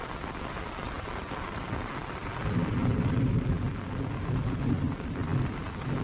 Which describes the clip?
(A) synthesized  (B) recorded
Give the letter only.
B